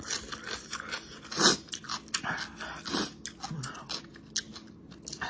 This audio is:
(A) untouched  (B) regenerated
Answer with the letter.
A